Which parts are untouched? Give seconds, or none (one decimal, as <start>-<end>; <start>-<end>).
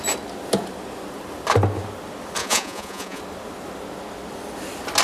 0.0-2.4; 3.2-5.0